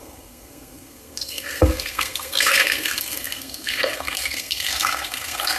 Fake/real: fake